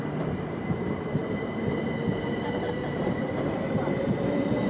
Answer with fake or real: fake